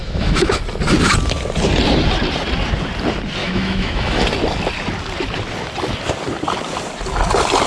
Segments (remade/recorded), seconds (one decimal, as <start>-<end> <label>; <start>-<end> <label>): 0.0-0.6 remade; 0.6-3.4 recorded; 3.4-4.2 remade; 4.2-7.7 recorded